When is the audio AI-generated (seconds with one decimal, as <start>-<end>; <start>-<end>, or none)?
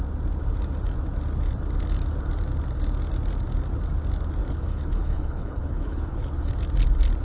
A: 4.4-6.5